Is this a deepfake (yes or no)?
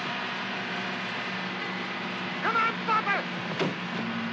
no